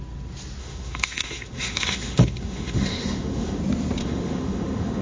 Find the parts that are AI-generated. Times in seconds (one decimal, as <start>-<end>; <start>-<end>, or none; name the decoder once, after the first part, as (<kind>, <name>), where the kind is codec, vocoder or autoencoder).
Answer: 0.6-3.6 (autoencoder, DAC-VAE); 4.0-5.0